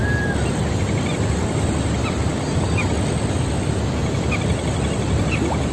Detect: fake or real real